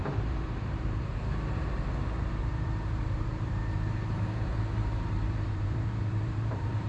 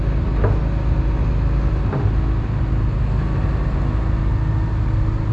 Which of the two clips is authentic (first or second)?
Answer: second